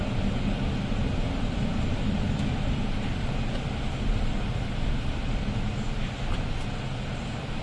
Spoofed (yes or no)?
no